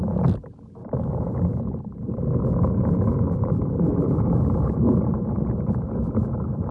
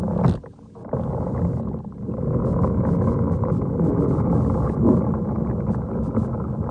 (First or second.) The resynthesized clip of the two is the first